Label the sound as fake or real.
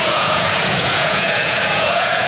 fake